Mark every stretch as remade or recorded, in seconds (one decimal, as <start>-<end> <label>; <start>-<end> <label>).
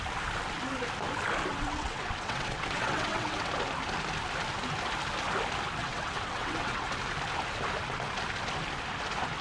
0.0-1.5 recorded; 1.5-3.5 remade; 3.5-5.8 recorded; 5.8-7.0 remade; 7.0-9.4 recorded